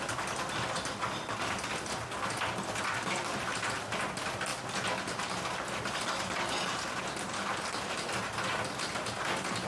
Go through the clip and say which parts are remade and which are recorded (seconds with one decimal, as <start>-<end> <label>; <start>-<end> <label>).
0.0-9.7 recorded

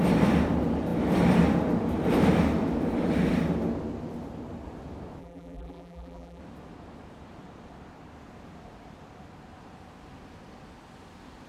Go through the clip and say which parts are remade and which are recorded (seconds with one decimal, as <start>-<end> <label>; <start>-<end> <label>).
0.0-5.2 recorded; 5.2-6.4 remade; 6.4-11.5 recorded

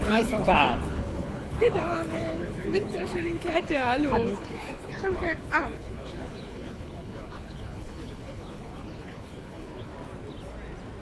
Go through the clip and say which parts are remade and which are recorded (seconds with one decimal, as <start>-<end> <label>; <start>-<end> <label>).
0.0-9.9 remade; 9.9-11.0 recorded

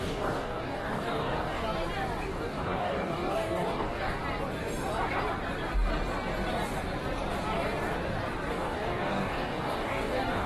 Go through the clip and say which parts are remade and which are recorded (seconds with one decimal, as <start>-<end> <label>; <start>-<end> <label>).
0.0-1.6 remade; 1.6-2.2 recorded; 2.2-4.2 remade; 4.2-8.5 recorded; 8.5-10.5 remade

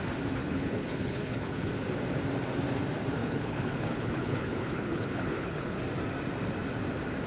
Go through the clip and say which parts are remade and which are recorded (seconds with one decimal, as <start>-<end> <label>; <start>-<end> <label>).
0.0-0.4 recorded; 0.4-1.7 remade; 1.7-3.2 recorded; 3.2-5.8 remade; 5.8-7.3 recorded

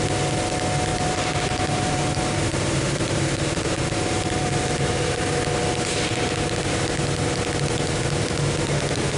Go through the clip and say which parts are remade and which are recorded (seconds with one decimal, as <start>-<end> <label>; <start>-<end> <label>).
0.0-0.9 recorded; 0.9-5.4 remade; 5.4-9.2 recorded

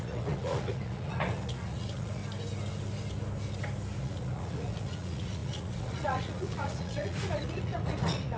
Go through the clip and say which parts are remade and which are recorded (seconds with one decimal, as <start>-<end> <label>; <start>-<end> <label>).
0.0-2.2 remade; 2.2-4.0 recorded; 4.0-8.4 remade